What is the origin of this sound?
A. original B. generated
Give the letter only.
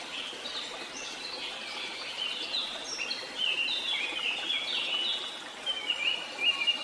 A